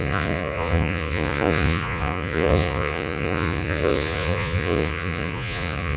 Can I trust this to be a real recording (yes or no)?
no